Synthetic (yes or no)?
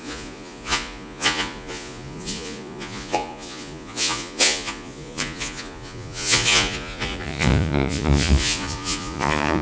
yes